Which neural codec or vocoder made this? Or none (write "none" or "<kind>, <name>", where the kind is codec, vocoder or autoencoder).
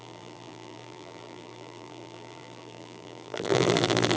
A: vocoder, BigVGAN v2